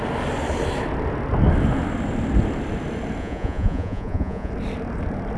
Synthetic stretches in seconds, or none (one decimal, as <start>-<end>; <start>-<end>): 3.2-4.5